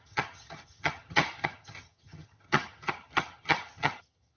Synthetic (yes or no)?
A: yes